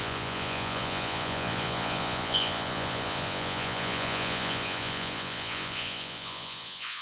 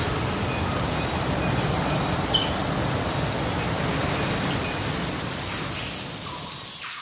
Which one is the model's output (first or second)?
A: first